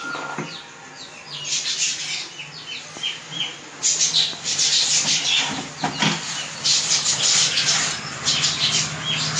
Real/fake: real